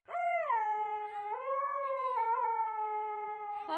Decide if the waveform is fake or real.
fake